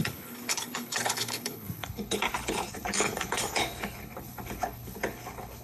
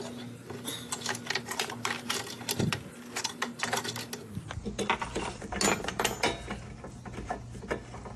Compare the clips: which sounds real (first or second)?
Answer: second